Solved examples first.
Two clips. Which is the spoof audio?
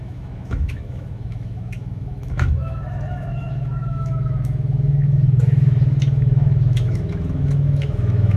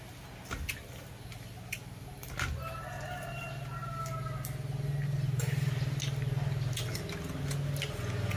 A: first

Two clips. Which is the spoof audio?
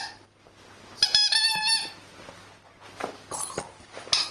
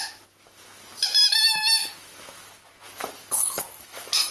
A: second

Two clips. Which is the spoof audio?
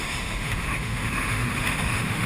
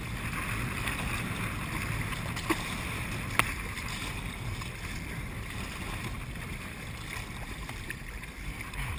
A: first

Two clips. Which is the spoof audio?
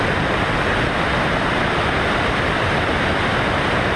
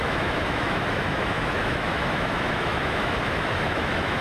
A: second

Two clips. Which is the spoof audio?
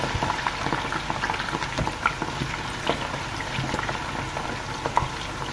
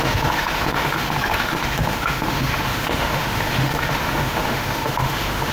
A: second